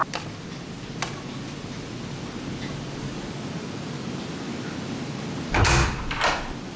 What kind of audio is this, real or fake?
real